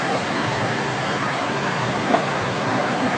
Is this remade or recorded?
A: remade